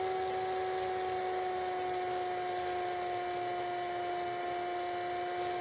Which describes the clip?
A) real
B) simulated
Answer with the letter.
A